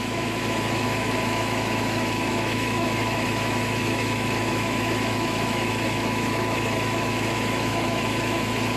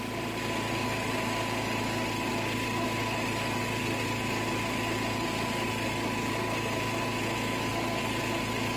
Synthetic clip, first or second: first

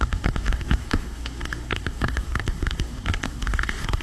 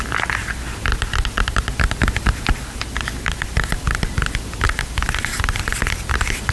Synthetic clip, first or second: first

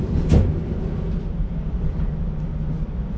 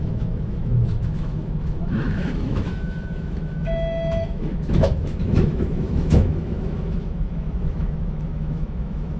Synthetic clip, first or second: second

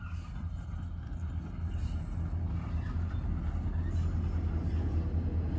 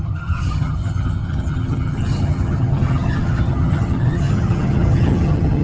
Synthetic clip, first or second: second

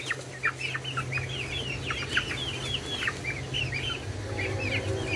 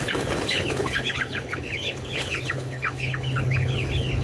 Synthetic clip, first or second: second